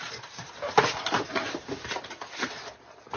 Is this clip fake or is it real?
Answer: real